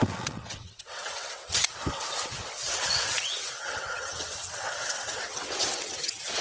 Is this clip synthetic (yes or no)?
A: yes